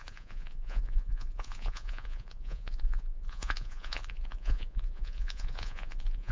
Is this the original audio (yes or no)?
no